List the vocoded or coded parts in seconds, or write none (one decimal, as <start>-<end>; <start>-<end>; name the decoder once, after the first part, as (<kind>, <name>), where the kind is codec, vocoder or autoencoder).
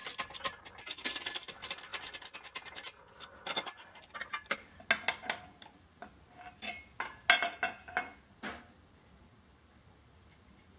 none